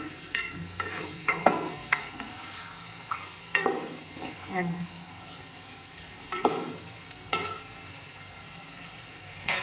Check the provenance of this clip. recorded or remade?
remade